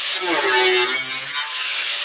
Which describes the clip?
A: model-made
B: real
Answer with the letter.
B